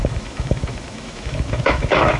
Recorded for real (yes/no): no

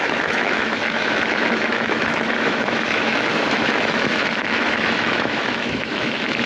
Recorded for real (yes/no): no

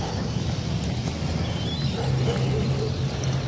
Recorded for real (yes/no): yes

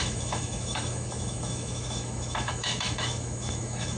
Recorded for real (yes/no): no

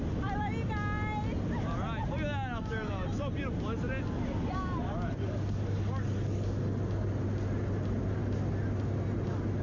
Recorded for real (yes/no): yes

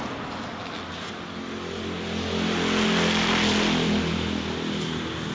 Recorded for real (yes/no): yes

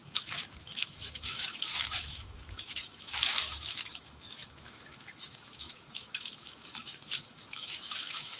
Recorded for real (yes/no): no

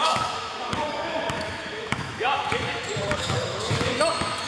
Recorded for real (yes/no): no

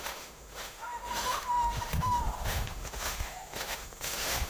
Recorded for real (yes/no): no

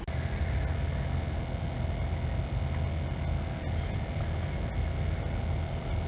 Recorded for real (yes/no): yes